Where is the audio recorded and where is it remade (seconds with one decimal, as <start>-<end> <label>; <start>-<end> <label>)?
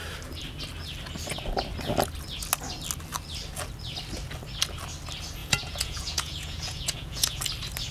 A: 0.0-5.4 recorded; 5.4-7.4 remade; 7.4-7.9 recorded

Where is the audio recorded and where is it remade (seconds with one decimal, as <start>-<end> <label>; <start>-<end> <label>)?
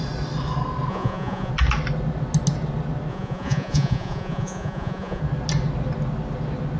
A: 0.0-0.9 recorded; 0.9-1.5 remade; 1.5-3.1 recorded; 3.1-5.2 remade; 5.2-6.8 recorded